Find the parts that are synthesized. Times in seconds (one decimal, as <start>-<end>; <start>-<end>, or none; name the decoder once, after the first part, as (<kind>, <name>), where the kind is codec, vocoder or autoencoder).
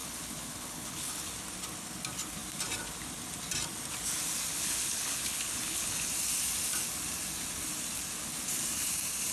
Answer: 0.0-1.2 (codec, HILCodec); 4.5-6.1